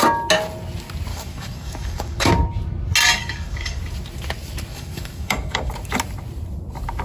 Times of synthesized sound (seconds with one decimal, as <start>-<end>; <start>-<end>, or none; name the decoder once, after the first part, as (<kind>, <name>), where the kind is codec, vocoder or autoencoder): 1.1-2.3 (codec, DAC); 3.2-3.8; 4.7-5.7